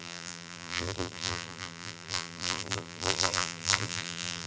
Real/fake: fake